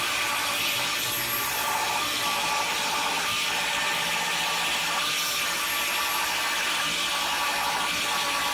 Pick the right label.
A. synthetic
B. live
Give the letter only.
B